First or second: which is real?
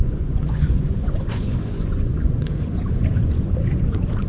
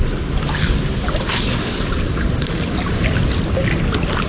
second